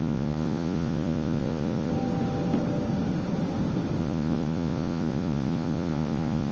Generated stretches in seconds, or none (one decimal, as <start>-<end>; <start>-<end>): 0.0-1.9; 4.0-6.5